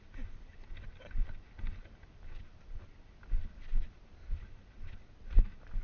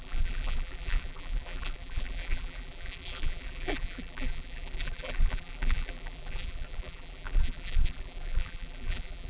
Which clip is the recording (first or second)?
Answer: first